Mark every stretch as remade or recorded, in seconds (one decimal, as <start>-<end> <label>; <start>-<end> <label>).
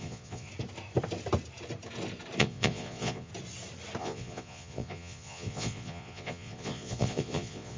0.0-0.5 remade; 0.5-2.4 recorded; 2.4-3.3 remade; 3.3-4.0 recorded; 4.0-7.8 remade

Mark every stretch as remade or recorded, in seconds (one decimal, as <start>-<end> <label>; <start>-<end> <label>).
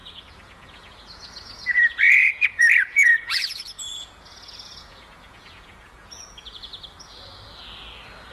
0.0-6.7 remade; 6.7-8.3 recorded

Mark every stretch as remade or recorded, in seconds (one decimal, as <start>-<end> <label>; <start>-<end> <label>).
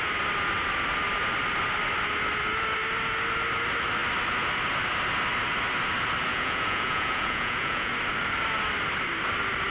0.0-6.3 recorded; 6.3-7.9 remade; 7.9-9.7 recorded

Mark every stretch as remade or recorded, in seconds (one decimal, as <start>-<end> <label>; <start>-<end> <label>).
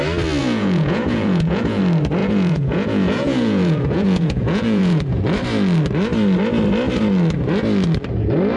0.0-0.4 recorded; 0.4-1.8 remade; 1.8-2.2 recorded; 2.2-5.2 remade; 5.2-8.6 recorded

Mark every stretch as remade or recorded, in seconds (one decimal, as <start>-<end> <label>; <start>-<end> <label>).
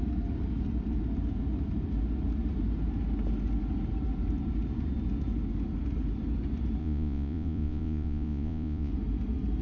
0.0-6.8 recorded; 6.8-8.9 remade; 8.9-9.6 recorded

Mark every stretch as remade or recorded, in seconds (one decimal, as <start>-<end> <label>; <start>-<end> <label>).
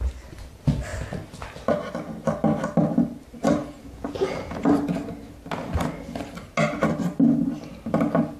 0.0-3.6 recorded; 3.6-4.7 remade; 4.7-8.4 recorded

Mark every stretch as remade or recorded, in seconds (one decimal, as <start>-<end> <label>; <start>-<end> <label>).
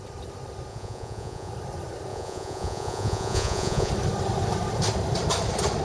0.0-0.7 recorded; 0.7-1.5 remade; 1.5-2.1 recorded; 2.1-3.9 remade; 3.9-5.8 recorded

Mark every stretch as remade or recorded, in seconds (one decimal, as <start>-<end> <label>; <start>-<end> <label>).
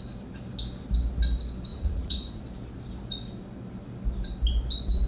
0.0-1.7 recorded; 1.7-2.4 remade; 2.4-5.1 recorded